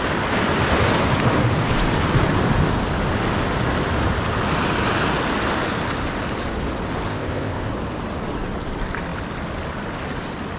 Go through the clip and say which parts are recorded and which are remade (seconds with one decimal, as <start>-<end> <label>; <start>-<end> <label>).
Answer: 0.0-7.1 recorded; 7.1-7.7 remade; 7.7-10.6 recorded